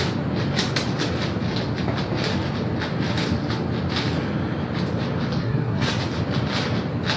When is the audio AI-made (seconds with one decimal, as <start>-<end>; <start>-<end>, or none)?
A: 5.4-6.0